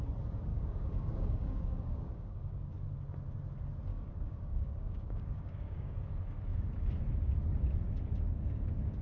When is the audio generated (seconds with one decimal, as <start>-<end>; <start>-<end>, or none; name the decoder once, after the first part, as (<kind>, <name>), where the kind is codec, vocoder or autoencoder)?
0.5-2.7 (codec, DAC); 3.9-6.0